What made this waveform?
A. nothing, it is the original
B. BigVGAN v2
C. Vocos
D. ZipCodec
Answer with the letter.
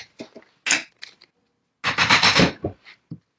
A